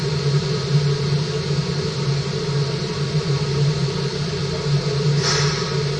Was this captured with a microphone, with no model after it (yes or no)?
yes